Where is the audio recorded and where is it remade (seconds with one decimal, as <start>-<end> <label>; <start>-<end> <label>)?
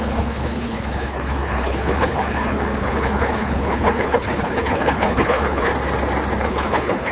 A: 0.0-5.7 remade; 5.7-6.4 recorded; 6.4-7.1 remade